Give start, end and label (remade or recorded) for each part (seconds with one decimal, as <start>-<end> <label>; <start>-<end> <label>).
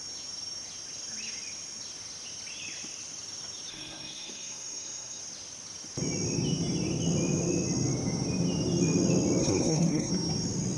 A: 0.0-3.7 recorded; 3.7-5.2 remade; 5.2-9.4 recorded; 9.4-10.1 remade; 10.1-10.8 recorded